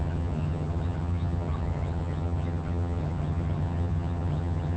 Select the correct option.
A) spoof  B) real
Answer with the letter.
A